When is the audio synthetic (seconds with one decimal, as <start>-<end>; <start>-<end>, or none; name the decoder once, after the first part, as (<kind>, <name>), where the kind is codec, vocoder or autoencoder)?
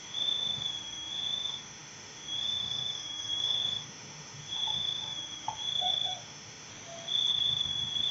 0.0-6.7 (autoencoder, DAC-VAE); 7.3-8.1